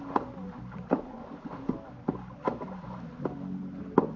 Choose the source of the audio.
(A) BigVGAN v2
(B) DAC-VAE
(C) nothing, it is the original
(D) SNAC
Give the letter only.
C